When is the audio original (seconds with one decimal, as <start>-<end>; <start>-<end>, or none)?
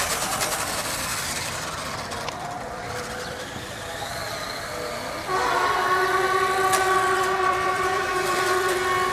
4.2-7.2